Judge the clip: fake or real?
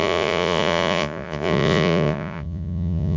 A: fake